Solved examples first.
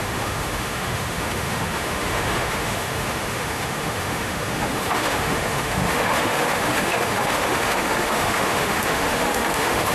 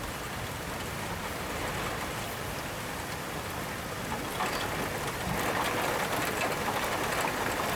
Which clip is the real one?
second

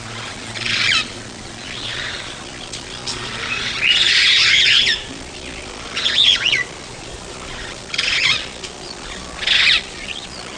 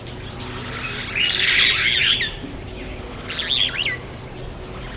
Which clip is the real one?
second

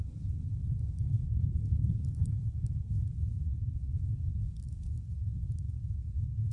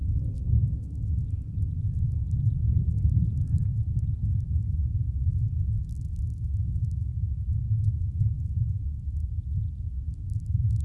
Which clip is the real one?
second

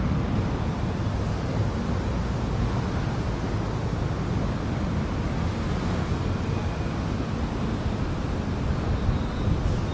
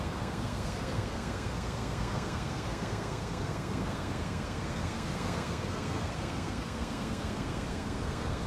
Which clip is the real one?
first